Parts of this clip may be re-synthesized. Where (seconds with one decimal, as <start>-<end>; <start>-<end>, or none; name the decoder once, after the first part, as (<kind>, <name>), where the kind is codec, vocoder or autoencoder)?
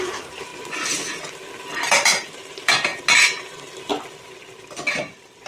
0.0-0.5 (vocoder, BigVGAN v2); 1.9-2.9; 3.4-3.9; 4.9-5.5